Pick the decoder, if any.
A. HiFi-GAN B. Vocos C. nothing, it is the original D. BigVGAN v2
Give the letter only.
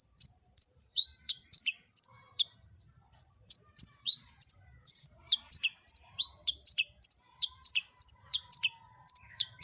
D